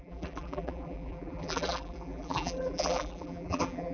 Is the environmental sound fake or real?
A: fake